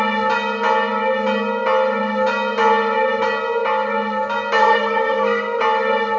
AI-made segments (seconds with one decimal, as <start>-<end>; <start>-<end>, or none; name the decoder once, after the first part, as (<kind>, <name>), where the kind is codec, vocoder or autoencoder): 4.6-5.6 (codec, SNAC)